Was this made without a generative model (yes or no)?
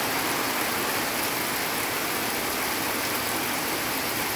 yes